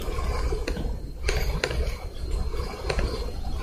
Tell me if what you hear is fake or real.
real